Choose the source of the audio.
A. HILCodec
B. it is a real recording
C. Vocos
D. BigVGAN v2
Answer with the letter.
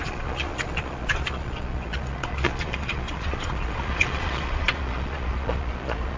C